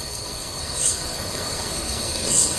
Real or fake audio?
fake